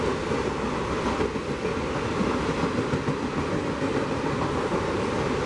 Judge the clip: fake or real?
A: real